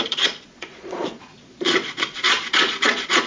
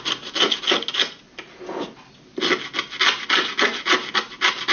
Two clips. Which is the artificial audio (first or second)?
first